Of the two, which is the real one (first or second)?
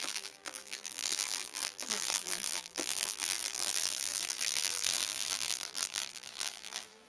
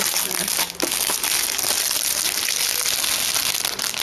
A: second